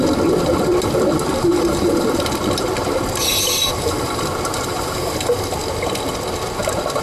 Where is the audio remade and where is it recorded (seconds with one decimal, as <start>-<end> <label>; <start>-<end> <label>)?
0.0-0.7 recorded; 0.7-4.7 remade; 4.7-7.0 recorded